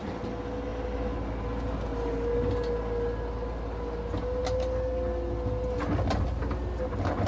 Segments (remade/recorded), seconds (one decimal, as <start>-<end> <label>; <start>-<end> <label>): 0.0-7.3 recorded